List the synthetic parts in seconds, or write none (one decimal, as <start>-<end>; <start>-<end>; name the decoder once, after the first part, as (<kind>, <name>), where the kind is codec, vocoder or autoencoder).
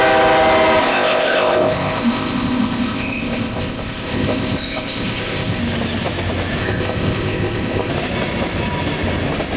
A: 0.8-5.6 (codec, ZipCodec); 6.6-7.9